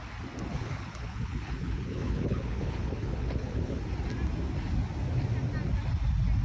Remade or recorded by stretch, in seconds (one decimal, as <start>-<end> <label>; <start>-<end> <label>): 0.0-0.5 recorded; 0.5-3.8 remade; 3.8-6.4 recorded